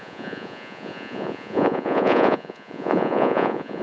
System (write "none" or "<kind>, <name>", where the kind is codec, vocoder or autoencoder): vocoder, Vocos